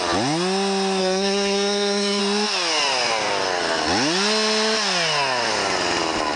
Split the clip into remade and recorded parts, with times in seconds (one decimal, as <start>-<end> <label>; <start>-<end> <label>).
0.0-1.0 recorded; 1.0-2.2 remade; 2.2-6.4 recorded